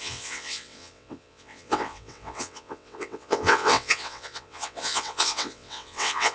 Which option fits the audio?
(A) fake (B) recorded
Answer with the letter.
A